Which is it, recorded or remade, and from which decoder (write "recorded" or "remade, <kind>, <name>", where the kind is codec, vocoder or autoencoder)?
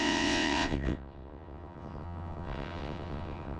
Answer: remade, vocoder, WaveNeXt